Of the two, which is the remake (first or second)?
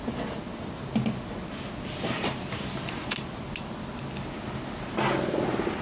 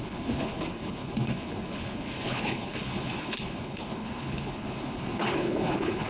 second